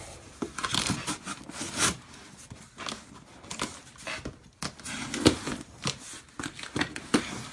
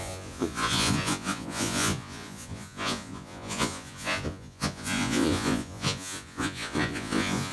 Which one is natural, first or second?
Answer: first